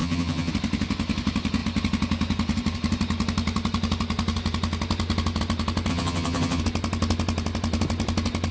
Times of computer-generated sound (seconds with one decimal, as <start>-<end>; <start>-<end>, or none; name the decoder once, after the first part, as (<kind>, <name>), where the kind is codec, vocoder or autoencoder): 0.0-0.5 (vocoder, HiFi-GAN); 5.9-6.6